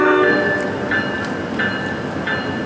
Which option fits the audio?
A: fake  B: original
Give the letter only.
B